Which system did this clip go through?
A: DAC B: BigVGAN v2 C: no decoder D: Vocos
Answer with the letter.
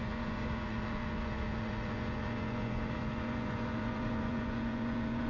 D